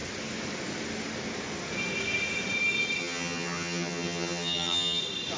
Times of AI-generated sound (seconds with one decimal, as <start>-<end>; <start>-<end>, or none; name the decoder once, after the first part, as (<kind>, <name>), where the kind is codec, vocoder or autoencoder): 3.0-5.0 (vocoder, HiFi-GAN)